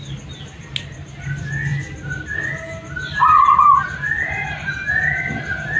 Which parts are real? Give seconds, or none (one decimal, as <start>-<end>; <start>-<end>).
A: 0.0-5.8